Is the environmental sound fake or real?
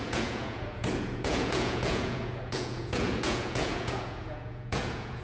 fake